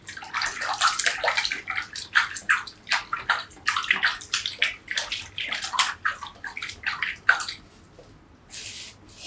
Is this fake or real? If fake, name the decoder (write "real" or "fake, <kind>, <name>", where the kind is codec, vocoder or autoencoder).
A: real